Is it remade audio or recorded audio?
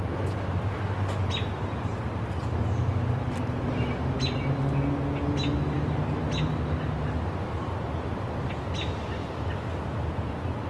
recorded